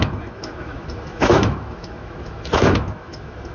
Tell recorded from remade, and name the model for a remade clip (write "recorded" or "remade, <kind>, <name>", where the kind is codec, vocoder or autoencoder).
remade, autoencoder, DAC-VAE